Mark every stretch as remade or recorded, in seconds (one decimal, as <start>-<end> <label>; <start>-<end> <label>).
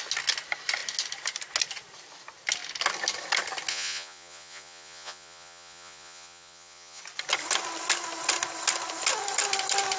0.0-3.7 recorded; 3.7-7.0 remade; 7.0-10.0 recorded